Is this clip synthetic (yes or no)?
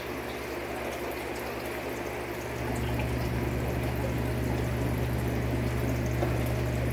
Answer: no